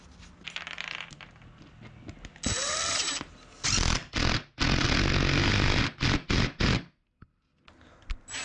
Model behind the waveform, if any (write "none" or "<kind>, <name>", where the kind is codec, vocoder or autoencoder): none